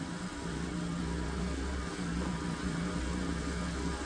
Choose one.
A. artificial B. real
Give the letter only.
B